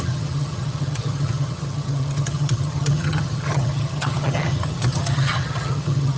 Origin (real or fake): fake